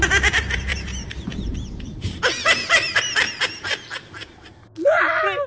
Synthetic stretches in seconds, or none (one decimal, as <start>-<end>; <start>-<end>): 0.7-3.4